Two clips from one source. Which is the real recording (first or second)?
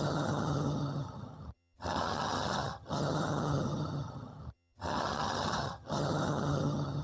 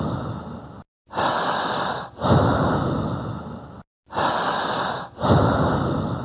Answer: second